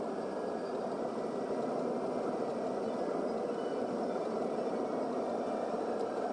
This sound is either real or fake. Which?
real